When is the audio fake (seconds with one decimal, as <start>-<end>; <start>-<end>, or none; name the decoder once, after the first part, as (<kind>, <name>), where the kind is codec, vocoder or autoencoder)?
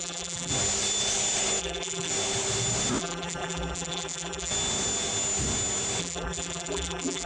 0.0-0.5 (vocoder, BigVGAN v2); 1.6-2.1; 3.0-4.5; 6.0-7.3